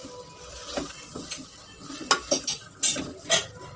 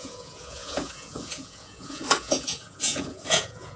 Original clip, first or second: first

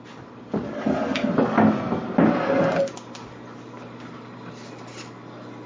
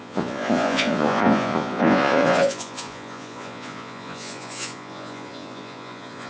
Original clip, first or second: first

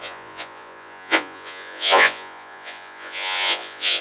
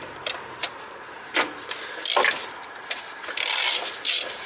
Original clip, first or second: second